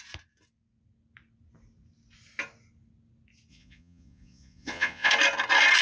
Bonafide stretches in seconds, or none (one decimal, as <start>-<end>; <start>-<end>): 0.0-3.5; 5.1-5.8